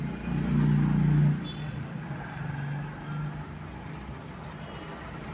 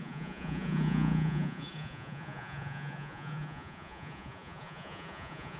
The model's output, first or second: second